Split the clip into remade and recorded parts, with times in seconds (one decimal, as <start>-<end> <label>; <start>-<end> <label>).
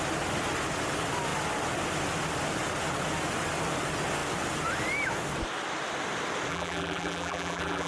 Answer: 0.0-6.5 recorded; 6.5-7.9 remade